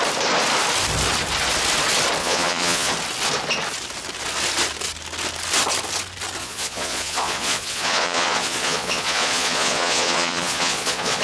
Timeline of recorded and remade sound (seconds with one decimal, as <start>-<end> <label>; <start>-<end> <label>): 0.0-2.2 recorded; 2.2-2.9 remade; 2.9-6.4 recorded; 6.4-11.2 remade